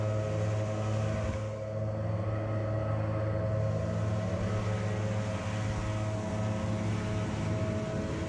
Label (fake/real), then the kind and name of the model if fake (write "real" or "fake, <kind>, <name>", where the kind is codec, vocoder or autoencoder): real